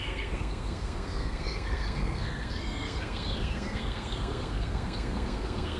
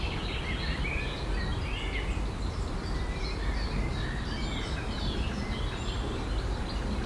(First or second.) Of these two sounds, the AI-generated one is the first